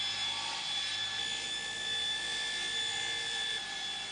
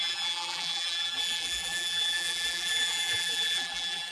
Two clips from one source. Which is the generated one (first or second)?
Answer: second